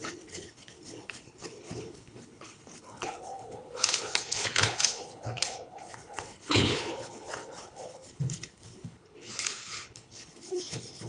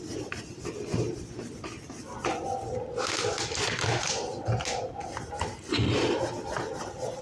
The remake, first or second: first